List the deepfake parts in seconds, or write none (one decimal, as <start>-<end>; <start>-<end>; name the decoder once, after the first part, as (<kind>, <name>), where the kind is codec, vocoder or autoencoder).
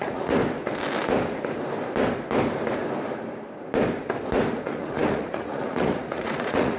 0.0-0.4 (vocoder, Vocos); 4.5-6.8